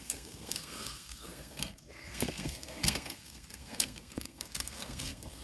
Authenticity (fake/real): fake